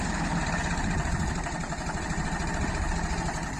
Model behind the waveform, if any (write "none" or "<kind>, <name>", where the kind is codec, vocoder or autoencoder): none